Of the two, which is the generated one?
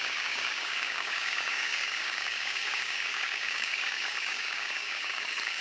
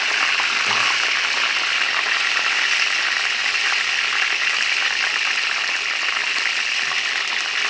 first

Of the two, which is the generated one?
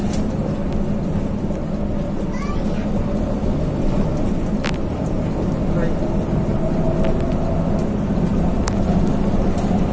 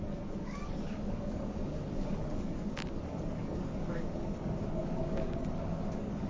second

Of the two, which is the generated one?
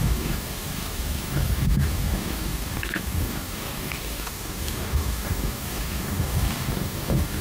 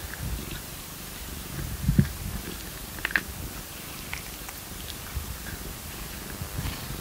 first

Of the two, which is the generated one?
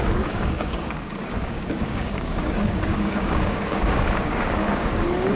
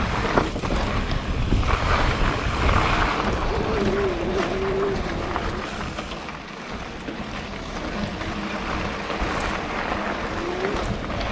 first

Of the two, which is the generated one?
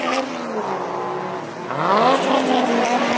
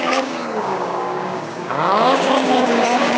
second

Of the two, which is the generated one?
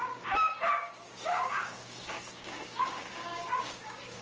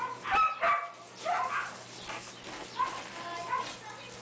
first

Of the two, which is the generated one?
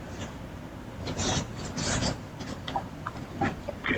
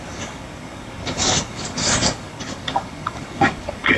second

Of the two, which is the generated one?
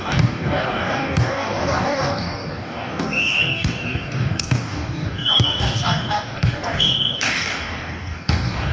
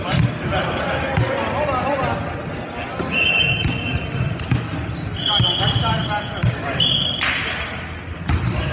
first